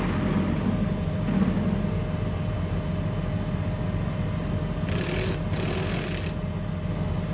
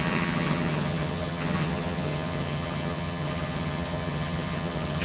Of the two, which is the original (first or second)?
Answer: first